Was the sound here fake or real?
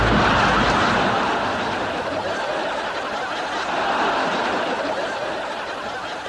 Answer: real